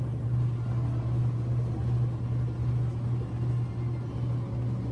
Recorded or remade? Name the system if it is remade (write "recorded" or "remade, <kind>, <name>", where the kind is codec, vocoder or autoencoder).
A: recorded